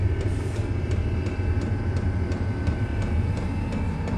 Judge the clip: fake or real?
real